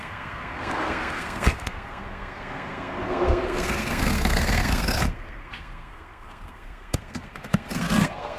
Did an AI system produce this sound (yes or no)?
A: yes